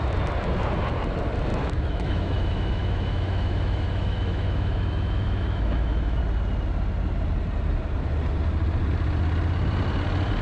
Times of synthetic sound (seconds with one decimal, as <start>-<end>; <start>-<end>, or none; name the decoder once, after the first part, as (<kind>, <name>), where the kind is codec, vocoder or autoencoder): 1.5-6.2 (autoencoder, DAC-VAE)